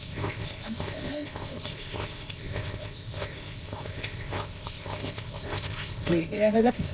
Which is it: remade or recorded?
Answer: remade